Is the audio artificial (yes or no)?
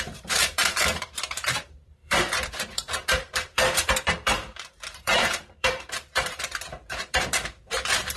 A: yes